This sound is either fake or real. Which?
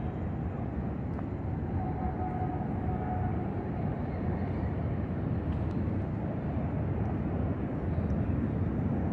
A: real